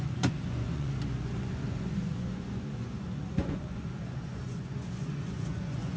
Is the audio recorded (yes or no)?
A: no